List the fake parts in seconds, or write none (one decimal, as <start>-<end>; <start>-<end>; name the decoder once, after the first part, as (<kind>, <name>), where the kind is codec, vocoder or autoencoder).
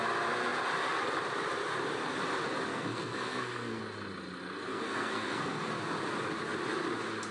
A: 2.7-3.8 (codec, SNAC); 4.7-5.7